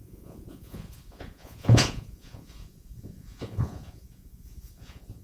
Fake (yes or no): yes